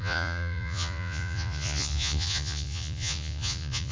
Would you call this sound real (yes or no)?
no